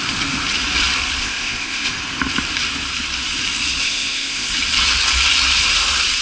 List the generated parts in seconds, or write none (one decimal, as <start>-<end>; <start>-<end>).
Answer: 1.2-1.9; 3.8-4.5